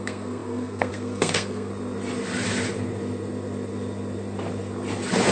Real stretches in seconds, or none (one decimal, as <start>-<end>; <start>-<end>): 1.7-5.3